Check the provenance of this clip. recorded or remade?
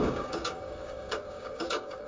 remade